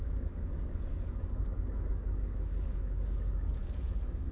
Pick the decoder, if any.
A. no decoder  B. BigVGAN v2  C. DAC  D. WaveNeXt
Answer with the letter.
C